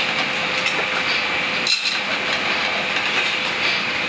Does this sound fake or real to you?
real